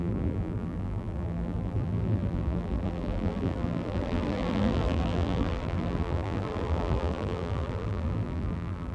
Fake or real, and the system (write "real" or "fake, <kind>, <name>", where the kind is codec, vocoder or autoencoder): fake, vocoder, BigVGAN v2